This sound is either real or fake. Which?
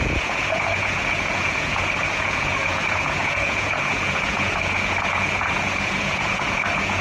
fake